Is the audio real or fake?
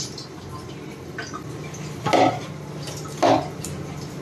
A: real